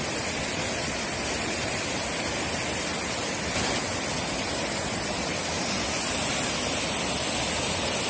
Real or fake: real